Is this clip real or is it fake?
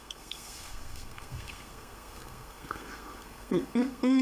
fake